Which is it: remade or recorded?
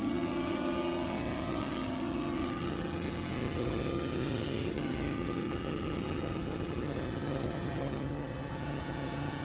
remade